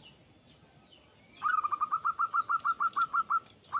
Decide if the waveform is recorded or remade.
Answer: recorded